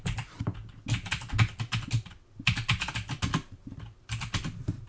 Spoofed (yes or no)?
no